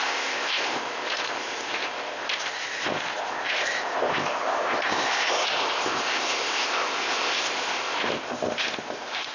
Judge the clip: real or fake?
fake